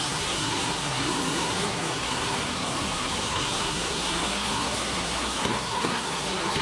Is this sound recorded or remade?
remade